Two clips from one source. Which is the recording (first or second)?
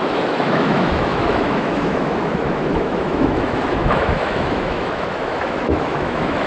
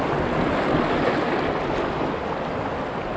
second